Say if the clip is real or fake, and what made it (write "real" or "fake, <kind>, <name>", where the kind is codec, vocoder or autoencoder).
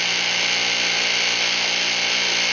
real